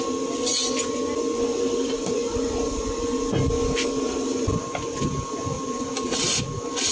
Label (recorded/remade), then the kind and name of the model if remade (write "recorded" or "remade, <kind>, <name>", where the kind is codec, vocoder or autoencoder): recorded